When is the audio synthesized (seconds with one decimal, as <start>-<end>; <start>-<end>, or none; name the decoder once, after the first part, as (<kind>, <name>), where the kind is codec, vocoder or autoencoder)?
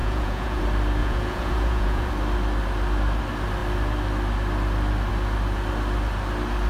0.0-0.6 (vocoder, Vocos); 1.0-2.1